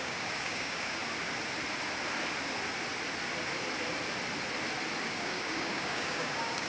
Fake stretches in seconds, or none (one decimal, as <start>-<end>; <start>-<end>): 0.0-1.0; 5.0-6.7